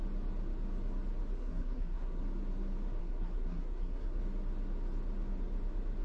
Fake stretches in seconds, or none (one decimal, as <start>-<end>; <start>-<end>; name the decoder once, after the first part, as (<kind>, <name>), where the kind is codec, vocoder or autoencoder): 1.4-2.2 (codec, SNAC); 3.0-4.2